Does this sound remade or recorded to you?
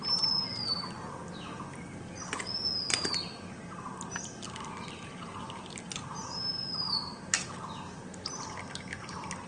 recorded